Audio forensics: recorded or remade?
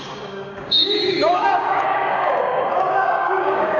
remade